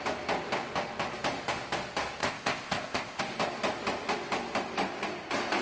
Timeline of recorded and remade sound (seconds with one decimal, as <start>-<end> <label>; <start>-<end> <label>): 0.0-2.2 recorded; 2.2-3.2 remade; 3.2-5.6 recorded